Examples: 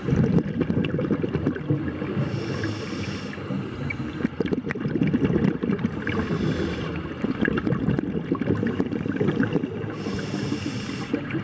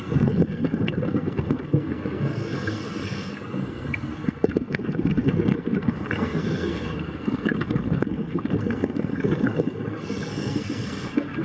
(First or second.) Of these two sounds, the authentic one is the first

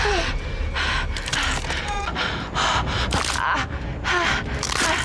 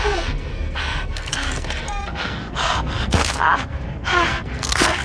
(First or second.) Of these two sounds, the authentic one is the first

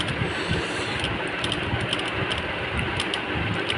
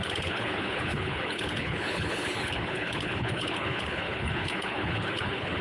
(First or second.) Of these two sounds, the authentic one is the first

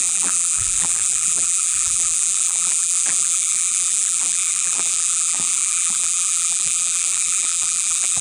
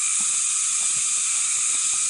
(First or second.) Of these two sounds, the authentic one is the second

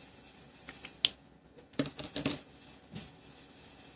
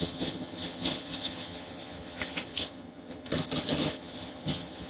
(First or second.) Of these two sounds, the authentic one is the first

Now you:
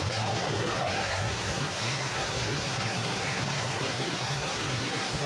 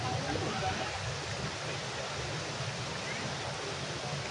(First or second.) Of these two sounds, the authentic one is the second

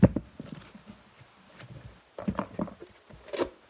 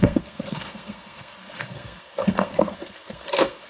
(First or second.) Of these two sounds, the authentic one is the first